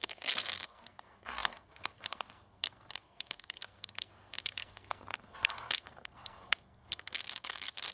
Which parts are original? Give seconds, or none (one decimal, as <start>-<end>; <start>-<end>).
none